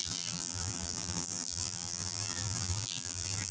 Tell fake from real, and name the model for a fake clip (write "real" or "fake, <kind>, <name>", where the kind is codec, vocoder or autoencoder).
fake, vocoder, BigVGAN v2